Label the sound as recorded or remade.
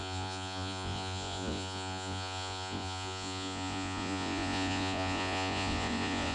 remade